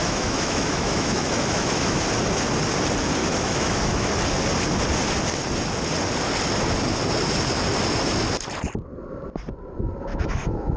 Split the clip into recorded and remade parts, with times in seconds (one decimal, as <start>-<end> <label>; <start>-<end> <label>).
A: 0.0-2.0 remade; 2.0-3.2 recorded; 3.2-4.1 remade; 4.1-10.1 recorded; 10.1-10.8 remade